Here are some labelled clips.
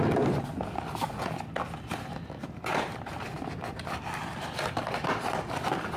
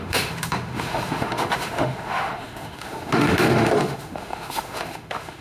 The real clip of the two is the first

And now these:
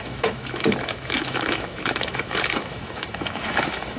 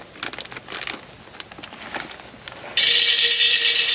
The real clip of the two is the second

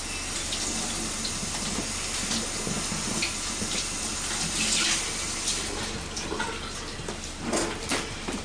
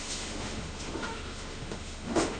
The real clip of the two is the first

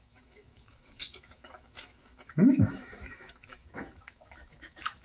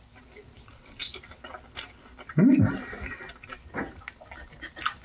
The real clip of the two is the second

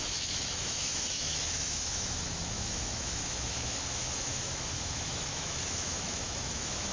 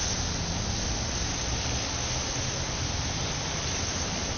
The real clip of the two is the second